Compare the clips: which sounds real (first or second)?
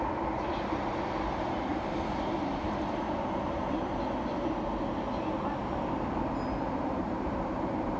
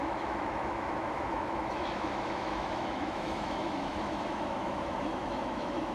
first